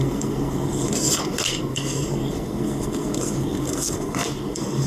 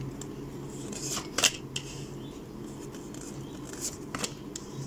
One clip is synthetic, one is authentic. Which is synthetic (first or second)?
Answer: first